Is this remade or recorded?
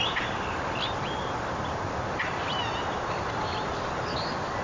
recorded